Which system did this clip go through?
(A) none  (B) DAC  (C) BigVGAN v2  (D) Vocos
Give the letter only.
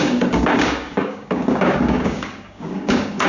B